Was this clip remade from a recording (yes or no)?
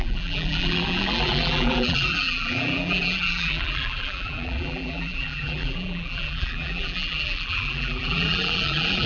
yes